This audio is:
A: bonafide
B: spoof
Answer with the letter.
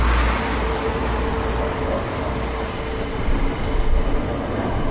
A